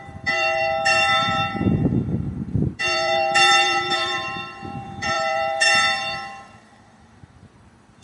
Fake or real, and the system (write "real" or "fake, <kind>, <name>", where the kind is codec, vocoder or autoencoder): fake, vocoder, BigVGAN v2